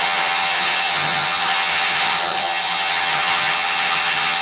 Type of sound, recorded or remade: remade